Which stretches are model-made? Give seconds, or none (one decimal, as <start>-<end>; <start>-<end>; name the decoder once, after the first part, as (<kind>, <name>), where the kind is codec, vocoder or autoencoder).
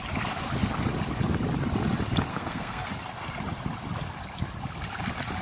2.3-2.9 (codec, SNAC)